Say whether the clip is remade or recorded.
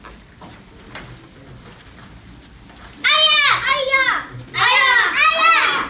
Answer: recorded